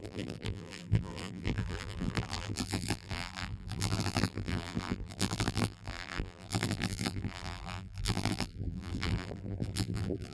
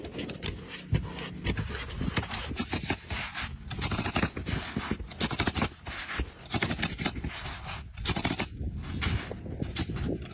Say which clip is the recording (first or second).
second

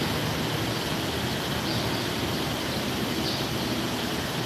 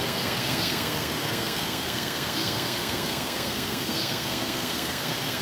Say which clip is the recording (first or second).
first